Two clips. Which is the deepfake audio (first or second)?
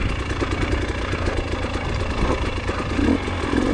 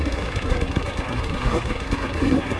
second